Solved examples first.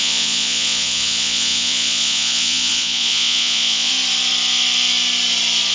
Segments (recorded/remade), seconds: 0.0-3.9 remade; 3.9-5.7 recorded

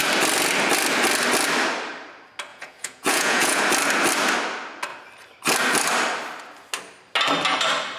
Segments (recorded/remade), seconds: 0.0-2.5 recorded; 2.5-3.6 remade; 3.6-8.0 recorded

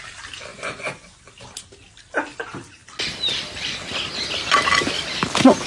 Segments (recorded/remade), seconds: 0.0-0.5 recorded; 0.5-1.2 remade; 1.2-5.7 recorded

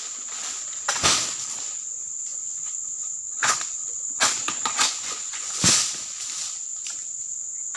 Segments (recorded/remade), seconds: 0.0-2.3 recorded; 2.3-5.6 remade; 5.6-7.8 recorded